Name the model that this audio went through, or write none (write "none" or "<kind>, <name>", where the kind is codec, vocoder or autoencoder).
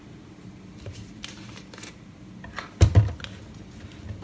none